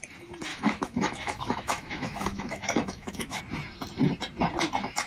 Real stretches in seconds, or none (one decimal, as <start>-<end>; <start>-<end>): 0.0-0.5; 3.4-5.1